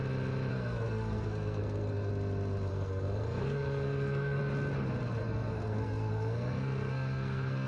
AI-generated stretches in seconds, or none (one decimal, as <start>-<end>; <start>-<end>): 0.5-2.1; 2.7-4.4; 5.2-7.7